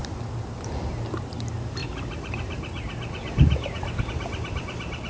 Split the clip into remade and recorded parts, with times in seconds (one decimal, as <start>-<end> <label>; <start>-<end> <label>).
0.0-1.8 recorded; 1.8-4.0 remade; 4.0-5.1 recorded